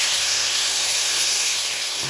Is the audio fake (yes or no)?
yes